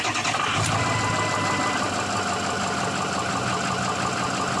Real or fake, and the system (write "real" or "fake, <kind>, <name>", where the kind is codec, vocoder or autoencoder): real